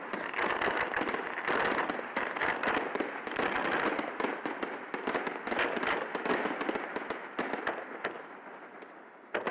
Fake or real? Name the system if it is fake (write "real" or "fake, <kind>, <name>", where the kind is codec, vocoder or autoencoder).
real